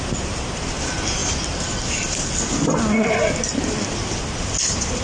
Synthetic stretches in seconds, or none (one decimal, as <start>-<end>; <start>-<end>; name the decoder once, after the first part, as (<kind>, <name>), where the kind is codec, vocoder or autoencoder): none